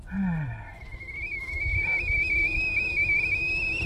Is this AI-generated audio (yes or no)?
no